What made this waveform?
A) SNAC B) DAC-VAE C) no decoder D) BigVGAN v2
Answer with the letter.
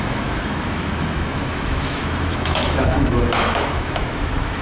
B